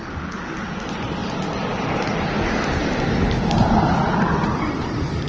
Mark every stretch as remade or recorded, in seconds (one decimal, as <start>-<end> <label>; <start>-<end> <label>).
0.0-5.3 recorded